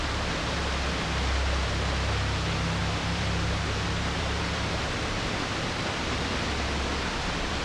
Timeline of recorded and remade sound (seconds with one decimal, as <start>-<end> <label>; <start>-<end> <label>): 0.0-2.8 recorded; 2.8-7.6 remade